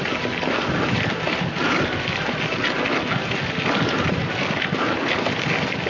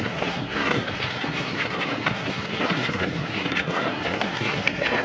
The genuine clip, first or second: first